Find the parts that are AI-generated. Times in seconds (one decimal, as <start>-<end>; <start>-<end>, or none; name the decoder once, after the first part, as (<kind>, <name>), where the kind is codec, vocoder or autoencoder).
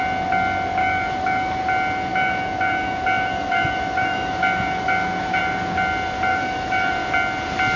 0.8-1.6 (autoencoder, DAC-VAE); 2.1-5.4; 6.3-6.9